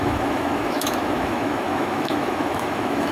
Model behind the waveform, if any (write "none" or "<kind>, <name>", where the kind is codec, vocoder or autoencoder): autoencoder, DAC-VAE